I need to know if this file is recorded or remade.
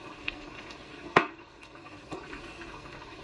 remade